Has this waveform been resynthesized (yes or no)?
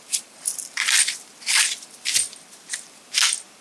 yes